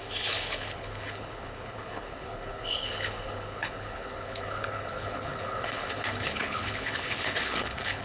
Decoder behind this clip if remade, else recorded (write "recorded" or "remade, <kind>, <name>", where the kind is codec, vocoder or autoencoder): remade, codec, HILCodec